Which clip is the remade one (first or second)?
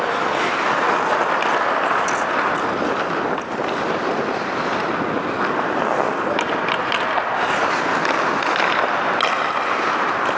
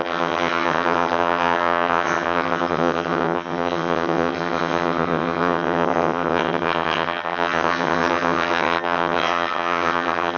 second